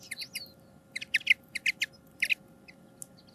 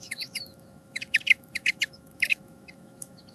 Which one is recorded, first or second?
first